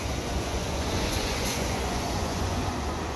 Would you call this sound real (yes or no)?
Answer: no